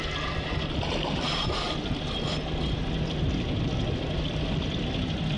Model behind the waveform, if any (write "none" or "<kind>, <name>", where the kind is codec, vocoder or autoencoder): none